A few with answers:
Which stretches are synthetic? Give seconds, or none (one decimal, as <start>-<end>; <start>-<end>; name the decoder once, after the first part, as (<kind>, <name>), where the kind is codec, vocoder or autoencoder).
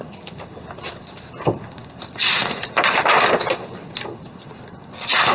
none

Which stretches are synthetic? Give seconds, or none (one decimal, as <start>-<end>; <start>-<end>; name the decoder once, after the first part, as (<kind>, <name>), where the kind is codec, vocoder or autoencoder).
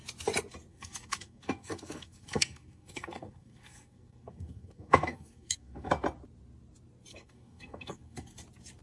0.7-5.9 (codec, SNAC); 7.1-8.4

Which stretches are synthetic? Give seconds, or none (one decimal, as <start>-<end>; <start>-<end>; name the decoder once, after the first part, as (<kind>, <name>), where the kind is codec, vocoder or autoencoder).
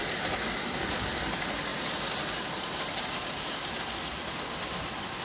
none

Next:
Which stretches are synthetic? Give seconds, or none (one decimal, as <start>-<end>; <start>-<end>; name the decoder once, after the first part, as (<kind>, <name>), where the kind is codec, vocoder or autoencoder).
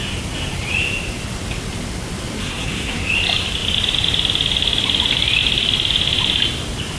2.4-3.1 (codec, SNAC)